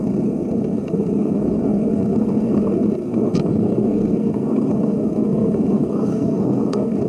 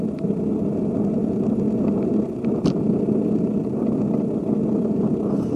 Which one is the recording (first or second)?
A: second